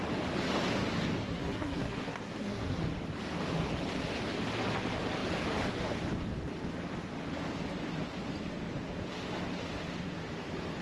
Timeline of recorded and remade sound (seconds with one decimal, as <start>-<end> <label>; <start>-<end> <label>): 0.0-1.2 recorded; 1.2-2.8 remade; 2.8-10.8 recorded